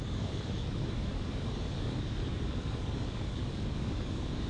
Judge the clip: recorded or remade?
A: remade